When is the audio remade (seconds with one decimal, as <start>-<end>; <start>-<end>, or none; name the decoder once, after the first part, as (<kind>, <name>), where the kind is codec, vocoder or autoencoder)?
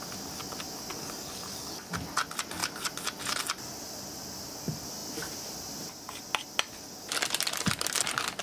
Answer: 0.9-1.9 (codec, DAC)